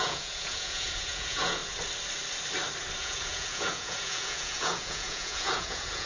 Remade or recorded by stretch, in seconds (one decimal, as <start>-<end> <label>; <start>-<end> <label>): 0.0-1.6 remade; 1.6-3.0 recorded; 3.0-6.1 remade